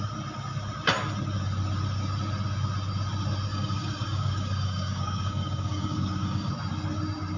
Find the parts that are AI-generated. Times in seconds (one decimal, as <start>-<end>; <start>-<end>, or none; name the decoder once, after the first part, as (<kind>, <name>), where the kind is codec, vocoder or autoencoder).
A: 3.5-6.5 (codec, DAC)